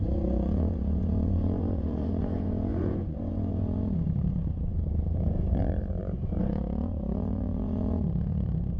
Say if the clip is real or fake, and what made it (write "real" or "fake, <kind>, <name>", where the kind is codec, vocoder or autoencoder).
fake, vocoder, Vocos